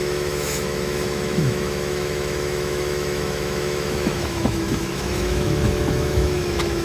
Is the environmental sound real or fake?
fake